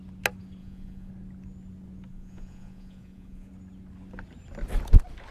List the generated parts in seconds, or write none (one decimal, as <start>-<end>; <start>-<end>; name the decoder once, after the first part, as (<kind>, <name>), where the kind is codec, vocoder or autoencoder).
0.6-1.1 (vocoder, Vocos); 2.1-3.5